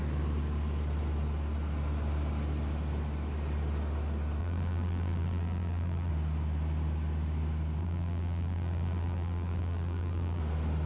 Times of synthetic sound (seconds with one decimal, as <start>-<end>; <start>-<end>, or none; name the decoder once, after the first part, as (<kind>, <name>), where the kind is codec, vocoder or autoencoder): 4.4-6.1 (vocoder, BigVGAN v2); 7.8-10.4